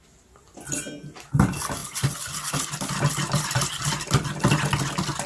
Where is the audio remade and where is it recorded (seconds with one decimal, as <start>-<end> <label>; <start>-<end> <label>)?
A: 0.0-5.3 recorded